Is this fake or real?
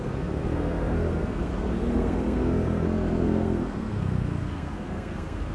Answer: fake